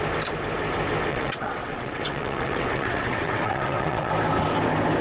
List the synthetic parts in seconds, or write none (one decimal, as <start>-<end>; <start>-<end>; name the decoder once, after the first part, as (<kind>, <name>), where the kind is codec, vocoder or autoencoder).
1.1-4.1 (vocoder, WaveNeXt)